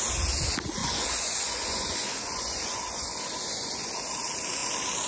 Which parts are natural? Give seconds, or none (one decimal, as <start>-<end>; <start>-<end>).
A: 0.0-0.8; 3.9-5.1